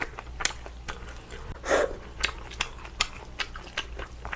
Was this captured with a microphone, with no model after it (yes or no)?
yes